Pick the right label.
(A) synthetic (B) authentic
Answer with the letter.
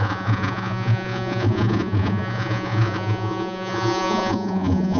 A